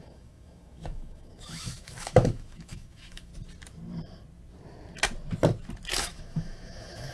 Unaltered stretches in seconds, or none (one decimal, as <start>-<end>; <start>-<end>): 3.3-6.0